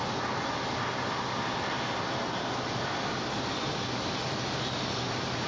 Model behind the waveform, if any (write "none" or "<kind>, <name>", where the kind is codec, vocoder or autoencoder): none